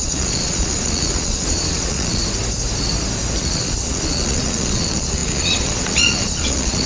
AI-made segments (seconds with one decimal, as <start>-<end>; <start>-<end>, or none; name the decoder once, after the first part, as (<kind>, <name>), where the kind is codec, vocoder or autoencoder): 0.0-2.2 (vocoder, Vocos); 3.4-6.9